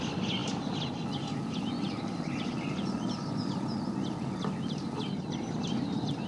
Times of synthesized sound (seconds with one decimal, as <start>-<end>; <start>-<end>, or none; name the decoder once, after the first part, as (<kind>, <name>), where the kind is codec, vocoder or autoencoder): none